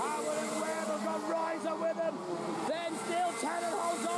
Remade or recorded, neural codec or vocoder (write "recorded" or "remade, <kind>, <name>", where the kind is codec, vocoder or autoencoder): recorded